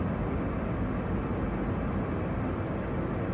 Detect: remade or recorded recorded